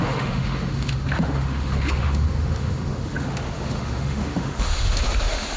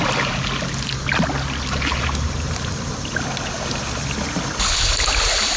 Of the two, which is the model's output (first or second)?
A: first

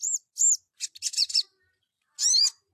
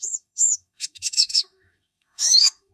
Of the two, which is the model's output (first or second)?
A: second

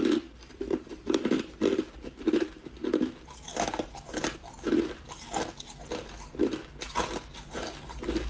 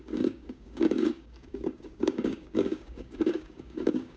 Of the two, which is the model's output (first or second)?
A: second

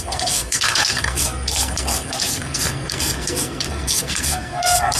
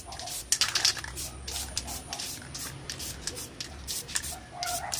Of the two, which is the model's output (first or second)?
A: first